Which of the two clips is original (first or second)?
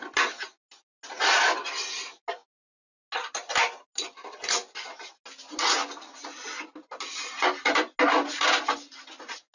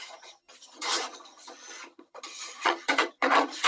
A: first